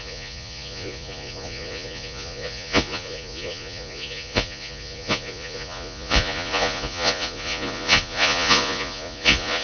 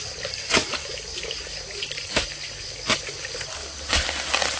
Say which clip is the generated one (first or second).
first